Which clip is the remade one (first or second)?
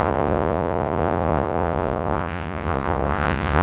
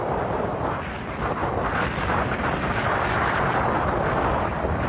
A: first